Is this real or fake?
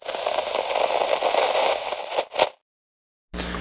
real